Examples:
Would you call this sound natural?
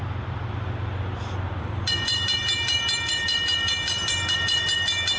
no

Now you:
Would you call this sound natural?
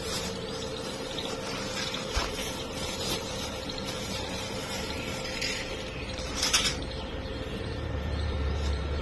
no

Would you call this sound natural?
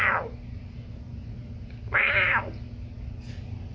yes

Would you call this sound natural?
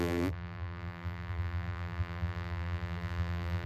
no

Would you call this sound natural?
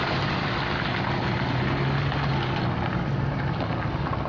yes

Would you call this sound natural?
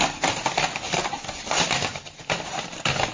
yes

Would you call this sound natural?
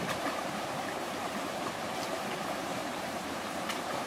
no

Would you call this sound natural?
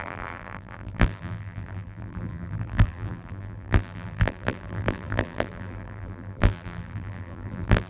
no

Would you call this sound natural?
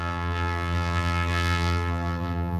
no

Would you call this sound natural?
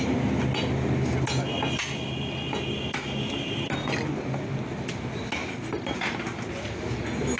yes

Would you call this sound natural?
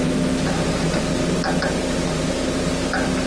yes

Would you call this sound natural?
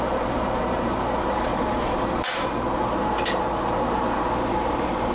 no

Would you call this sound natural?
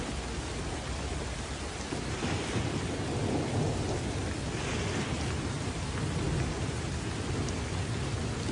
yes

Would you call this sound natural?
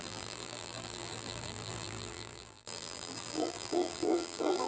no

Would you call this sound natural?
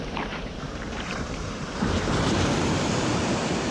no